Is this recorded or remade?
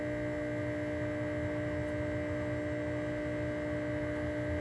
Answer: recorded